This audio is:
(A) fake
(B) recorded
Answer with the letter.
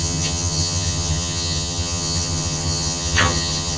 A